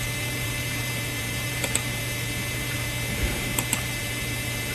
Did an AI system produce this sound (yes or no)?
yes